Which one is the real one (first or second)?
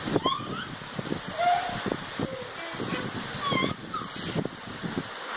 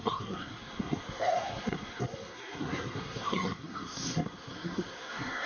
first